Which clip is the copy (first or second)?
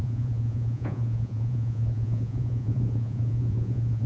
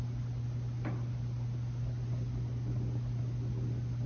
first